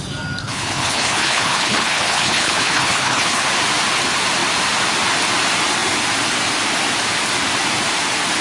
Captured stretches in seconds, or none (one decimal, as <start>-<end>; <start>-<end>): 0.0-0.4; 3.4-8.4